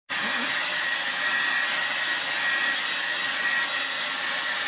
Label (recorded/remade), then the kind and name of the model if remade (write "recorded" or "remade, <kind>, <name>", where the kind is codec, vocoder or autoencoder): recorded